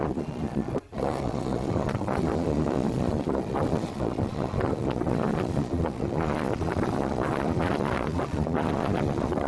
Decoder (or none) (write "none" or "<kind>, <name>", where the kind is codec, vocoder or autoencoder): vocoder, Vocos